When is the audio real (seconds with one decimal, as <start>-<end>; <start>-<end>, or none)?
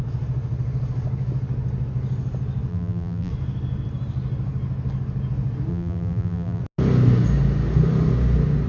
0.0-2.7; 3.3-5.7; 6.6-8.7